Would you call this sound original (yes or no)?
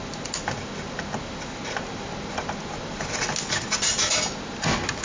yes